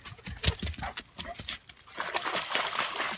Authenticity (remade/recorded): remade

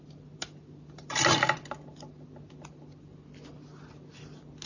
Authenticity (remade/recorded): recorded